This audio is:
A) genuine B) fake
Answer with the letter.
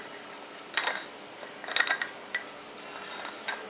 A